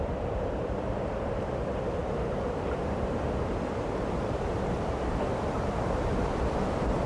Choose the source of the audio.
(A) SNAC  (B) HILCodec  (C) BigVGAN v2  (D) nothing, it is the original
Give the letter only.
C